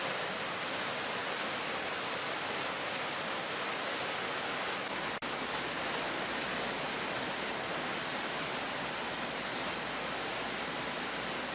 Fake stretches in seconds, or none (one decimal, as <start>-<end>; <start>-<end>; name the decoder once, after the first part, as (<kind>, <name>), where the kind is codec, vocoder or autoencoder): none